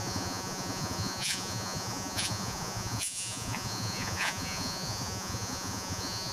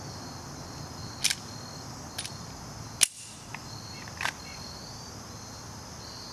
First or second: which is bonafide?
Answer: second